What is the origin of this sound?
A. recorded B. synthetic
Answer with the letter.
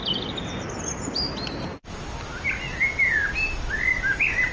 A